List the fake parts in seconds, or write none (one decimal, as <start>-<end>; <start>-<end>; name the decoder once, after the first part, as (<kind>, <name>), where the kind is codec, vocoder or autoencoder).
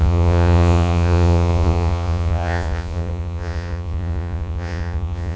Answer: 0.0-5.4 (vocoder, Vocos)